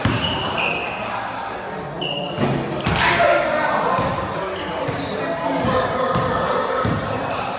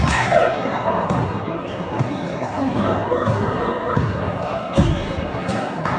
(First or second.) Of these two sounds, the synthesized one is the second